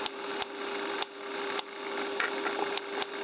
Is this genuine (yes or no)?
yes